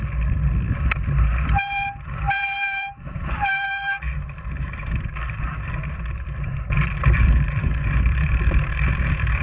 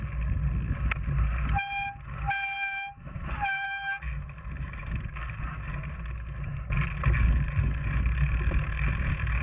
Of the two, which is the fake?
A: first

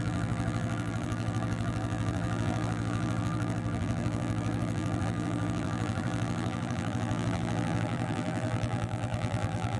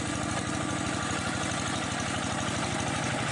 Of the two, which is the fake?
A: first